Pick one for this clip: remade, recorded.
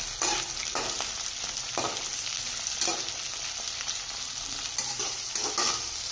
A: recorded